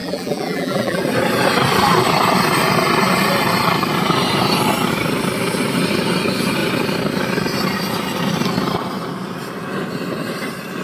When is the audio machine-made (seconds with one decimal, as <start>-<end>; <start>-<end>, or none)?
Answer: 0.0-1.0